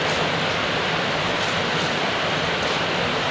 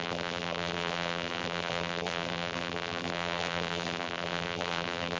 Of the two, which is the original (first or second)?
first